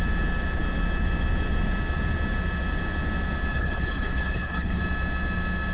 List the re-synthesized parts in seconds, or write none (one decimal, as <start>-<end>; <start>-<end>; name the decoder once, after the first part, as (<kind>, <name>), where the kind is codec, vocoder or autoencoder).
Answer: 3.5-4.8 (codec, HILCodec)